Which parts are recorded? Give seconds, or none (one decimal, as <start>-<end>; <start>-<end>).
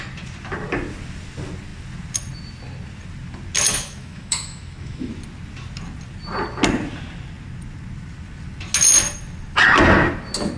0.0-3.7; 5.1-10.6